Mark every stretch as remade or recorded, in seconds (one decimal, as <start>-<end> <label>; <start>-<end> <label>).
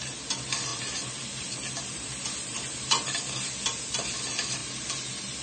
0.0-5.4 recorded